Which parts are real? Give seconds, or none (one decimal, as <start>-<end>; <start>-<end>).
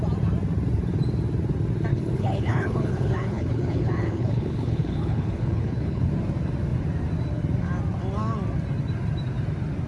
0.0-1.9; 6.1-9.9